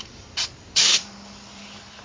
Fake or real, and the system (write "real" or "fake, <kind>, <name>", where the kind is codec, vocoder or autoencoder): real